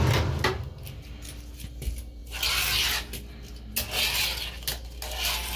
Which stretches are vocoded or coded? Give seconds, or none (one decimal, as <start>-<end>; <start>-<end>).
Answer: none